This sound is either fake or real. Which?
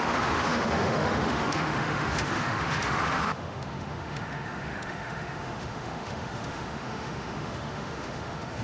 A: fake